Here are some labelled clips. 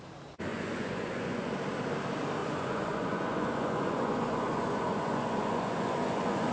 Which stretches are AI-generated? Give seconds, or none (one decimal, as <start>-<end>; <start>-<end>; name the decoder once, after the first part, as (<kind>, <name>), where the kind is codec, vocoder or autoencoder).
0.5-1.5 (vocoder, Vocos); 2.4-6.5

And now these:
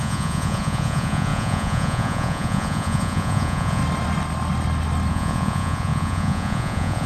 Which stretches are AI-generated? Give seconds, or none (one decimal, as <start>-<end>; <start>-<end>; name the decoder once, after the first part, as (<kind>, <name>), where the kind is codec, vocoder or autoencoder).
0.0-3.8 (vocoder, Vocos); 5.1-7.1

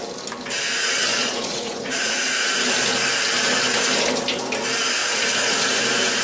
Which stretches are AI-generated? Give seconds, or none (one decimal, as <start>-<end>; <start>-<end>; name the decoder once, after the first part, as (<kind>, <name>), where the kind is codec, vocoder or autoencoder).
1.1-2.6 (vocoder, Vocos); 5.0-5.8